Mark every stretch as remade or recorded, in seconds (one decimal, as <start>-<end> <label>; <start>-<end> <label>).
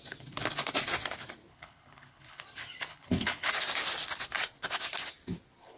0.0-1.5 recorded; 1.5-2.4 remade; 2.4-2.9 recorded; 2.9-3.5 remade; 3.5-5.8 recorded